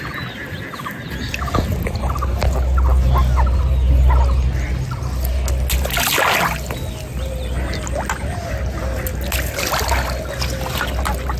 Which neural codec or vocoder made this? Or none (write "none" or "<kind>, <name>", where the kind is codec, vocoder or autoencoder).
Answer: none